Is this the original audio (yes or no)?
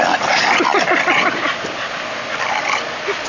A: yes